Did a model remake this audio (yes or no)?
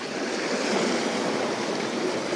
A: no